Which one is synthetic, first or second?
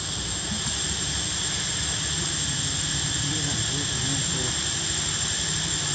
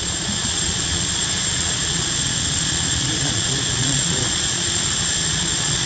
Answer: second